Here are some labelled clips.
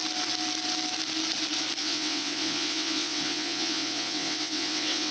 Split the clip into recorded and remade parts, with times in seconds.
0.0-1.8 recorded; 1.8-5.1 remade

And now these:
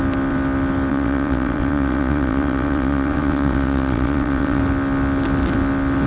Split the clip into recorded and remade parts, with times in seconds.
0.0-0.9 recorded; 0.9-4.6 remade; 4.6-6.1 recorded

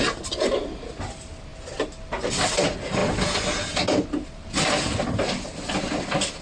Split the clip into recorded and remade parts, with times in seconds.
0.0-6.4 recorded